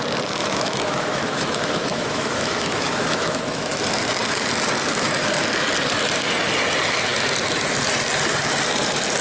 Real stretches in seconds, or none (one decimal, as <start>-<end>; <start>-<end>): 0.0-0.4; 3.7-9.2